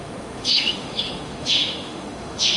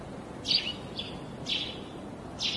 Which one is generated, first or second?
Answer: first